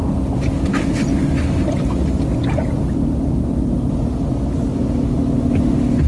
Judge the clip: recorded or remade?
recorded